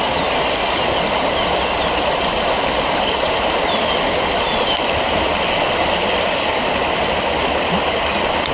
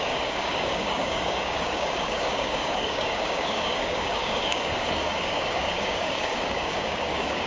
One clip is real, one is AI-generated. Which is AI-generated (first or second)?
second